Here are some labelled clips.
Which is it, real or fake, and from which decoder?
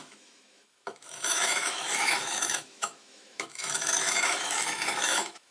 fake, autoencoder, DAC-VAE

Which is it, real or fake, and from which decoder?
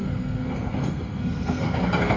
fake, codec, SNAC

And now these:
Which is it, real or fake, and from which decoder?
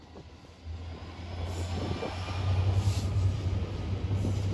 real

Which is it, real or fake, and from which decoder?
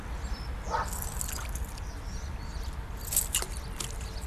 real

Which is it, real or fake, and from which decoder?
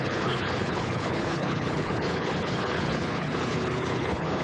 fake, codec, HILCodec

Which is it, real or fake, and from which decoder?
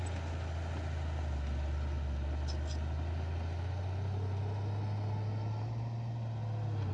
real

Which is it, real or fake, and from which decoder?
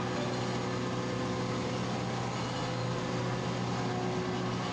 real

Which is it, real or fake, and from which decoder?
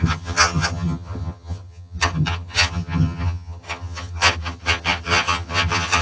fake, vocoder, HiFi-GAN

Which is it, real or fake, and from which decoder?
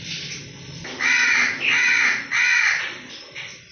real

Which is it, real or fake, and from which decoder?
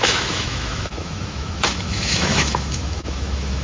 fake, autoencoder, DAC-VAE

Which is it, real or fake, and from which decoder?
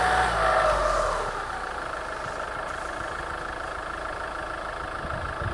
real